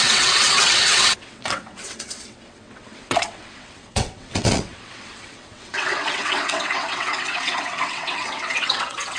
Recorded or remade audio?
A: remade